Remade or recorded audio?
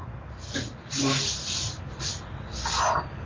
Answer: recorded